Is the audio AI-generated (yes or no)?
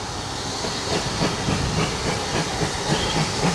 no